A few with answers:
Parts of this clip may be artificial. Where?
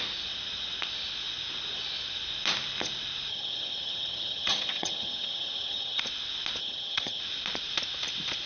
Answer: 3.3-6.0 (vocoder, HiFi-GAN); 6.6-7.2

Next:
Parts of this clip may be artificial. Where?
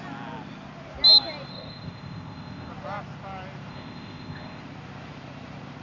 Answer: 1.5-2.7 (codec, ZipCodec); 3.7-4.6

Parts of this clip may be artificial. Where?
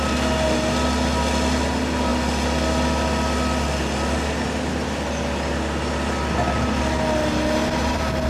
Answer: none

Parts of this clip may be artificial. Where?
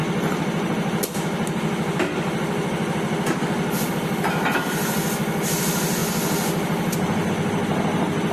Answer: none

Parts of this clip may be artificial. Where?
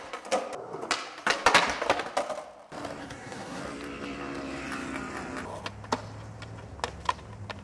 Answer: 3.0-3.6 (codec, SNAC)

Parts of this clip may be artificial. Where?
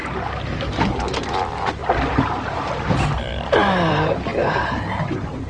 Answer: 0.0-0.7 (vocoder, BigVGAN v2); 1.8-3.9